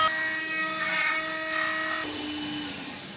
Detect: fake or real real